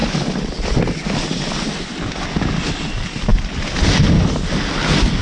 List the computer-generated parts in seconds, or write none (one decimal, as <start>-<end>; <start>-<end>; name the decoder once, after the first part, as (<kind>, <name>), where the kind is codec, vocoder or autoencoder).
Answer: none